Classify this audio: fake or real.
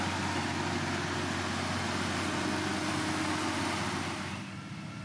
real